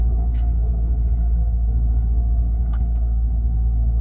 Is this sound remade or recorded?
remade